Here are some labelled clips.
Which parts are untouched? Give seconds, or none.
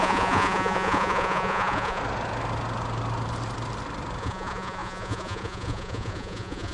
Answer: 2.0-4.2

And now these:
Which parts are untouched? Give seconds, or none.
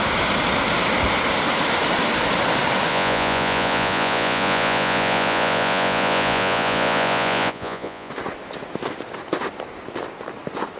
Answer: 0.0-2.9; 8.1-10.8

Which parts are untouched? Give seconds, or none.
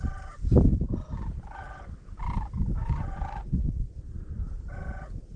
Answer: 0.0-2.8; 3.7-5.4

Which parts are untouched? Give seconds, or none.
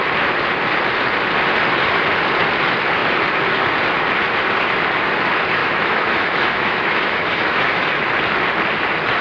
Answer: 0.0-5.6; 7.8-9.2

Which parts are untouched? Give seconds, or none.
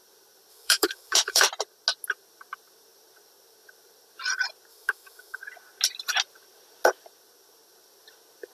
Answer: 0.0-0.5; 1.4-4.7; 5.4-8.5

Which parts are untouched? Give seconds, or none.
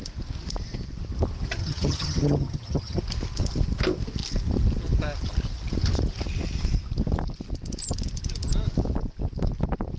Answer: 0.0-1.6; 3.0-10.0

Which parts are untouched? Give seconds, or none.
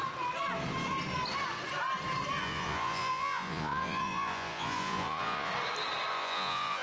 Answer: 0.0-2.4; 5.5-6.1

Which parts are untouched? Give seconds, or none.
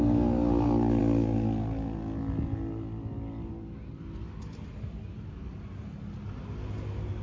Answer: 0.0-7.2